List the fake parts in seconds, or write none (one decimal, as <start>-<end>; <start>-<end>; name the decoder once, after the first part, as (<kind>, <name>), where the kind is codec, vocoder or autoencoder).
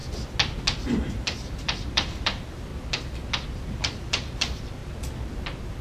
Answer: 1.1-2.7 (vocoder, BigVGAN v2); 3.5-4.8